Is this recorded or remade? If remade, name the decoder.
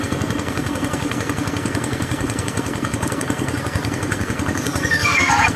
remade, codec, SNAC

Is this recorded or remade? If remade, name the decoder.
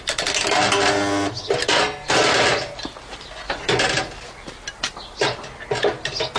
recorded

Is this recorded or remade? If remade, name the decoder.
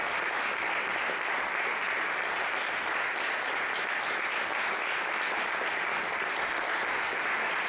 recorded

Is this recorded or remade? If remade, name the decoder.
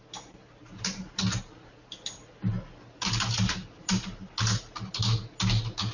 recorded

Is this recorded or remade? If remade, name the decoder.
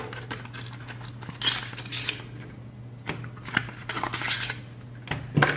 recorded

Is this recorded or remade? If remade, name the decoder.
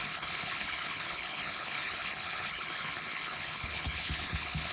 remade, codec, HILCodec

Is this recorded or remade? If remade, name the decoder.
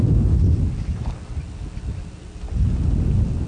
recorded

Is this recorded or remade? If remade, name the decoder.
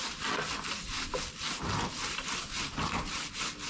recorded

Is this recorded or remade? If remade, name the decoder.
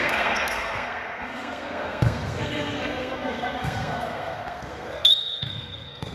remade, codec, SNAC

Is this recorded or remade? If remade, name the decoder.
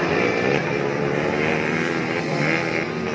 recorded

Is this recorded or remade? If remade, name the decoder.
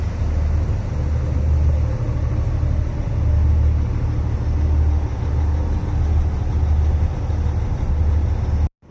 recorded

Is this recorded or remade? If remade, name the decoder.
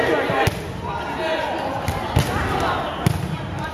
recorded